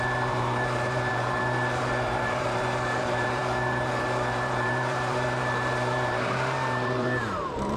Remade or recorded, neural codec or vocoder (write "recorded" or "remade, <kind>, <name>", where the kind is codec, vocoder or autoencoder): remade, vocoder, BigVGAN v2